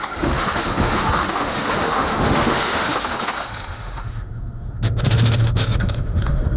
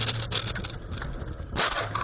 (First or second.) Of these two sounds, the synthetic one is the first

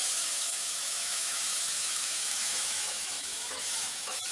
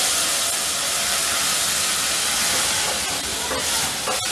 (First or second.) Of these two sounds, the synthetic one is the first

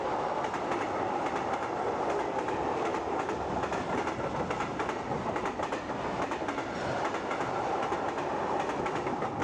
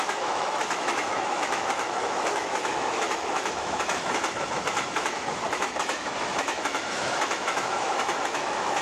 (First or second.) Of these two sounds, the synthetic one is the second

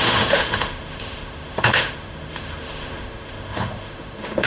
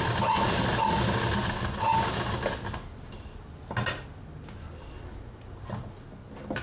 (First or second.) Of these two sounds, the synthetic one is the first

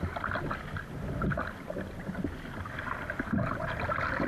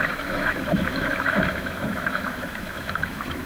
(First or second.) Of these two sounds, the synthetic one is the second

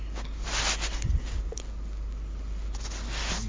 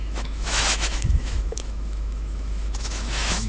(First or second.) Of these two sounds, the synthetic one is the second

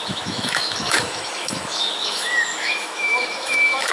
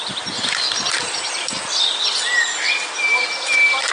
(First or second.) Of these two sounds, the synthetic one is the first